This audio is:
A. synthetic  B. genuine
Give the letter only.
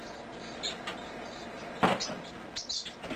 B